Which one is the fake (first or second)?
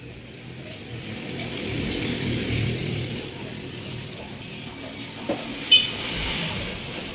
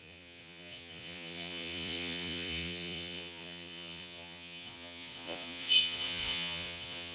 second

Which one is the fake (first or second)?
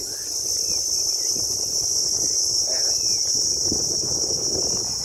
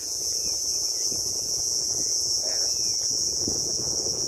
second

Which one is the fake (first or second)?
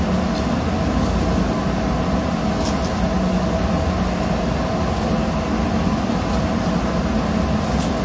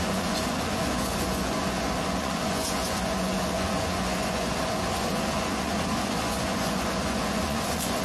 second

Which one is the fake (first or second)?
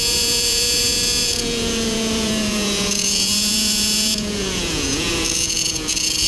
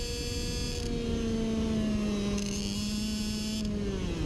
first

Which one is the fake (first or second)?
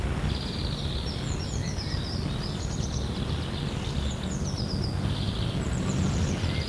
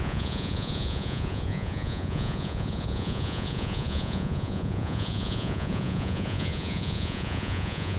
second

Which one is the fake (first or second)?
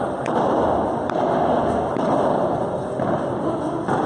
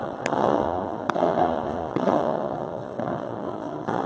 second